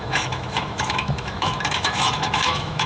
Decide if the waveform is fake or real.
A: fake